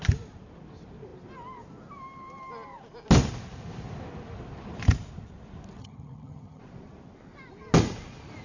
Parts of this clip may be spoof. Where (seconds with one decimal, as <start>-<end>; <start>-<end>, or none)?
5.8-6.6